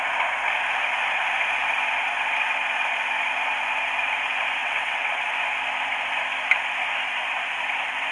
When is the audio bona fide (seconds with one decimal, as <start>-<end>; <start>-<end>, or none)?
0.0-4.6; 5.2-8.1